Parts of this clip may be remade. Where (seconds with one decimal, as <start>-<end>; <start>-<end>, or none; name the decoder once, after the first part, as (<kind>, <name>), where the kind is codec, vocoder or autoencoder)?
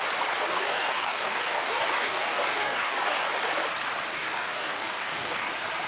0.5-3.3 (codec, DAC); 4.1-5.5